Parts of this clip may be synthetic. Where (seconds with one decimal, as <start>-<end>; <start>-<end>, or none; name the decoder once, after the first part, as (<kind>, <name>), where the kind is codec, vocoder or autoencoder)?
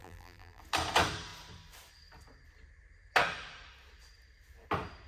0.0-0.6 (vocoder, BigVGAN v2)